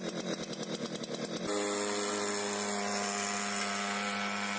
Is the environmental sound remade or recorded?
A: recorded